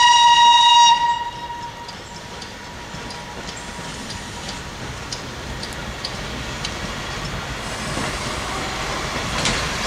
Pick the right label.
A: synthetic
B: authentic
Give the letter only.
B